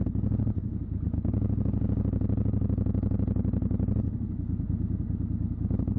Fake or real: real